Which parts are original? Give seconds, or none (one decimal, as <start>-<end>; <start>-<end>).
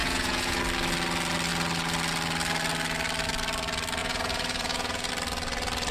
0.6-4.0; 5.1-5.9